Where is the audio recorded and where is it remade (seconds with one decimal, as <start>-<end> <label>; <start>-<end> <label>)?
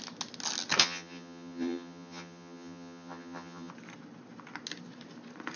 0.0-0.8 recorded; 0.8-3.7 remade; 3.7-5.6 recorded